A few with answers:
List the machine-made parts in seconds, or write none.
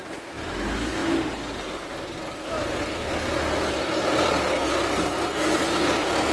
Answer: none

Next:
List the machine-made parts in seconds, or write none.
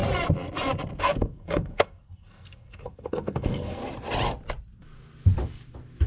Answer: 1.0-3.8 (codec, SNAC)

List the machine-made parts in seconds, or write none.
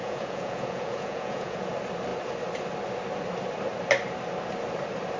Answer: 0.0-1.7 (vocoder, Vocos)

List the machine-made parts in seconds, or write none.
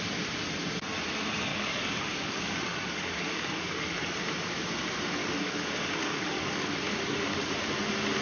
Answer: 1.5-4.1 (codec, DAC); 5.2-7.5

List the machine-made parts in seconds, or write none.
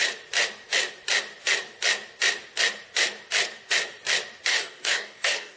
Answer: 4.5-5.6 (codec, DAC)